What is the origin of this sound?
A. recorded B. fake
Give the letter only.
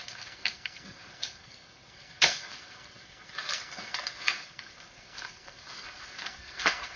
B